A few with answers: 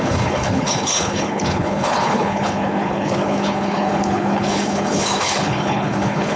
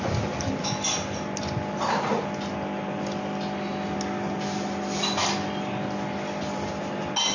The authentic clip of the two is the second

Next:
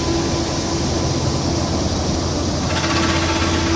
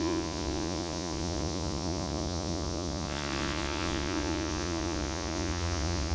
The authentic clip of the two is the first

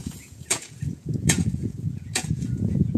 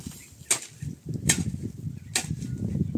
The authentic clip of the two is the second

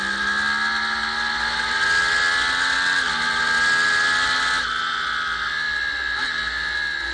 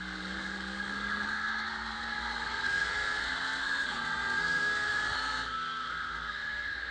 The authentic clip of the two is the first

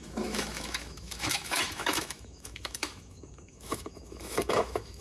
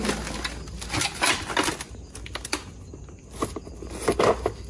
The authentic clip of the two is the second